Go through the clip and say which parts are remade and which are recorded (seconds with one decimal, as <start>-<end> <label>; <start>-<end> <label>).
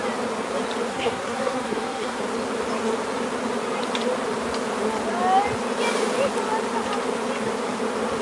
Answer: 0.0-0.9 recorded; 0.9-2.2 remade; 2.2-8.2 recorded